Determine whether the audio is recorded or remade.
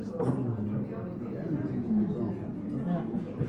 recorded